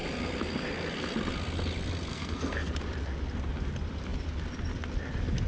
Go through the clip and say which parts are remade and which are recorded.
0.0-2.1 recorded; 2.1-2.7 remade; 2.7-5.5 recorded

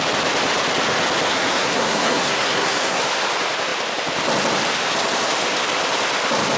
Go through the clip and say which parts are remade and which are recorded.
0.0-1.3 recorded; 1.3-3.0 remade; 3.0-6.6 recorded

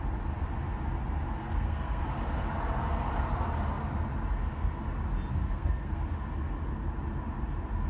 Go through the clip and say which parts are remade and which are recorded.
0.0-1.4 recorded; 1.4-2.0 remade; 2.0-5.4 recorded; 5.4-6.0 remade; 6.0-7.9 recorded

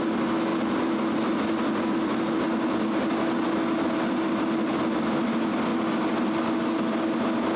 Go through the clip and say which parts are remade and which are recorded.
0.0-7.6 recorded